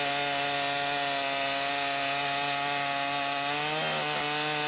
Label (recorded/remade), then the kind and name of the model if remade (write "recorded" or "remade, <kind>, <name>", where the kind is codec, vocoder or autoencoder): recorded